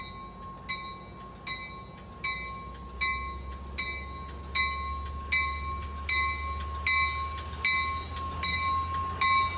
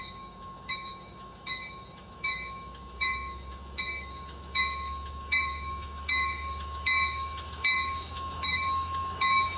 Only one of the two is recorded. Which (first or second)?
first